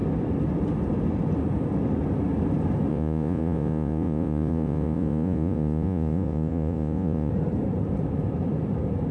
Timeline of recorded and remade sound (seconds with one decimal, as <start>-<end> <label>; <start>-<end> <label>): 0.0-2.9 recorded; 2.9-7.3 remade; 7.3-9.1 recorded